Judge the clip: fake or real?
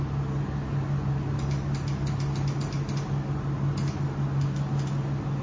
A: real